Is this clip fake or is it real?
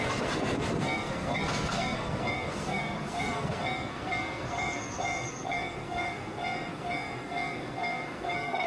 fake